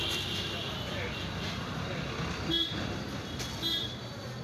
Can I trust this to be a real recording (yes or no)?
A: yes